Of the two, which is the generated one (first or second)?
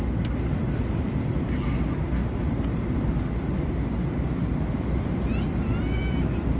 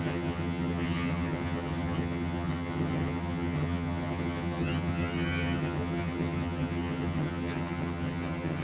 second